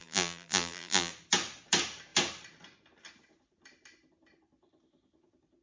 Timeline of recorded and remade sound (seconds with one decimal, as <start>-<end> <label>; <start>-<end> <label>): 0.0-1.1 remade; 1.1-5.6 recorded